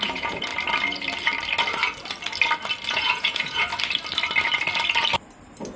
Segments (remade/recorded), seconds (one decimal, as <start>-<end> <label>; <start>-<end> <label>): 0.0-0.5 remade; 0.5-2.9 recorded; 2.9-3.7 remade; 3.7-5.8 recorded